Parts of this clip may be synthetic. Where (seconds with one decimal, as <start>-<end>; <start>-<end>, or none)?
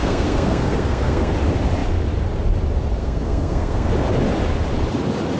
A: 0.0-1.3; 3.0-3.9